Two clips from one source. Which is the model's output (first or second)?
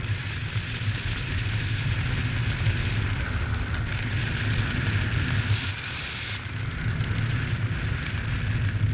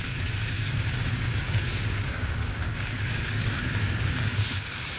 second